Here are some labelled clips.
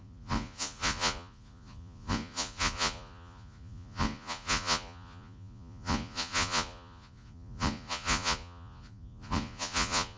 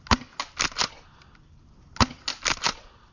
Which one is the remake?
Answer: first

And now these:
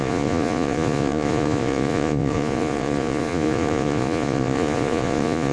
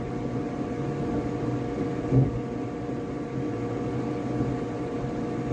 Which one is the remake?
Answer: first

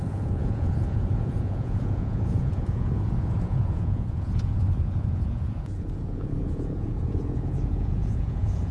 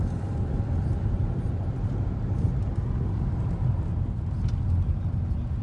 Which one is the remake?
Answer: first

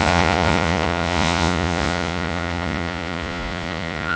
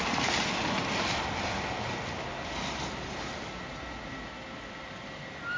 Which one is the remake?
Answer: first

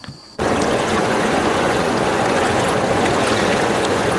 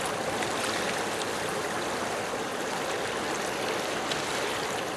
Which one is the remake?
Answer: first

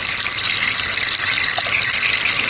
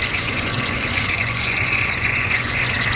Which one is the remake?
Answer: second